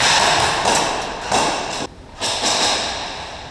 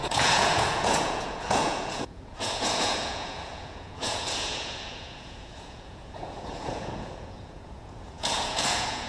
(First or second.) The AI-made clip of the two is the second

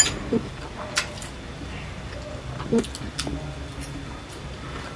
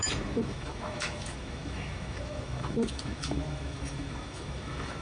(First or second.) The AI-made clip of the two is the second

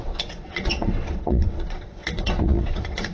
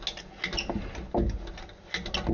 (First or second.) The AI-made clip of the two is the first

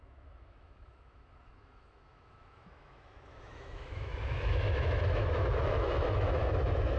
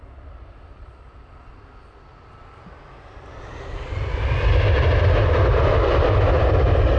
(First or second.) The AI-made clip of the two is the first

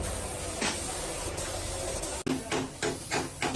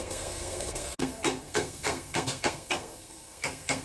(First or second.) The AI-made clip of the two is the second